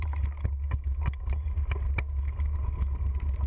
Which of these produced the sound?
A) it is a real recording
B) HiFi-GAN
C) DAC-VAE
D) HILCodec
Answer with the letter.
A